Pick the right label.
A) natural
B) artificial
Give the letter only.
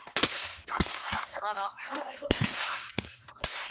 B